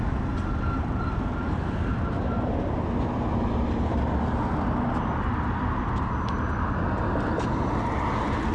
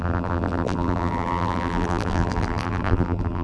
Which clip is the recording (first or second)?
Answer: first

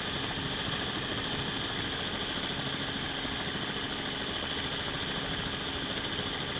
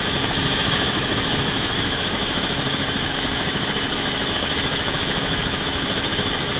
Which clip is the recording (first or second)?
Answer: first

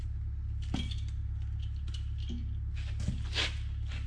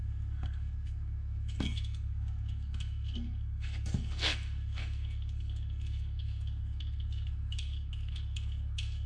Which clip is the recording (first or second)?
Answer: first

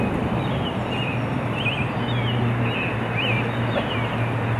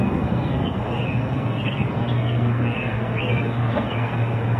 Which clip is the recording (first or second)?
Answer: first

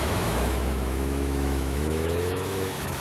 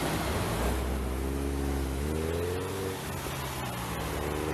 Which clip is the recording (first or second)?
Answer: second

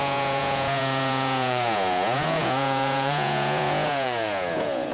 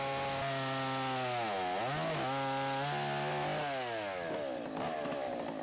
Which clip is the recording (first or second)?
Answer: second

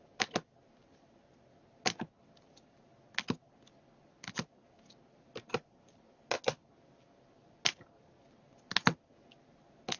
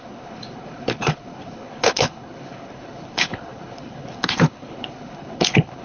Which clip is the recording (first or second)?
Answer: first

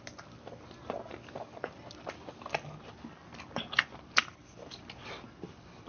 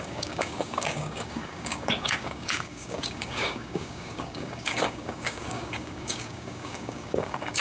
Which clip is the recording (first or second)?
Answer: first